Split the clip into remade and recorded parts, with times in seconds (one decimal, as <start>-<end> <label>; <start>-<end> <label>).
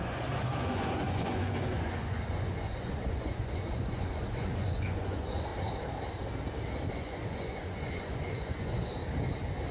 0.0-5.5 remade; 5.5-6.9 recorded; 6.9-9.0 remade; 9.0-9.7 recorded